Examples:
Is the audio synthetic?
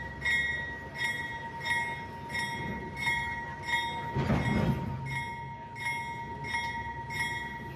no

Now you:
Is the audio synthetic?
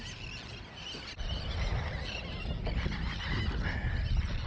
no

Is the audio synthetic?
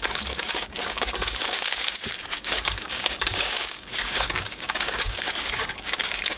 yes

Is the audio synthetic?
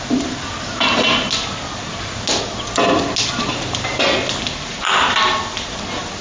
no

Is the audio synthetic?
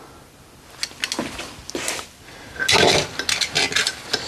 no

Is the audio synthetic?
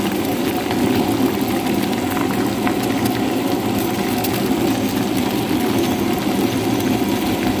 no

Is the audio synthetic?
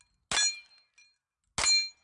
no